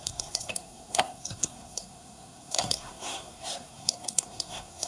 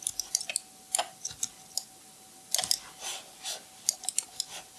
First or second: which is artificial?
first